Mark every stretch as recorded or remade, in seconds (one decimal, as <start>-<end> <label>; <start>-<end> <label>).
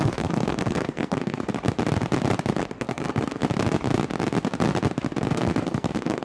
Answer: 0.0-1.5 remade; 1.5-2.7 recorded; 2.7-3.4 remade; 3.4-5.2 recorded; 5.2-6.2 remade